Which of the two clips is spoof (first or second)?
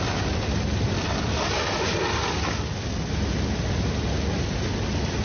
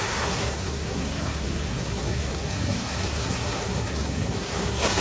second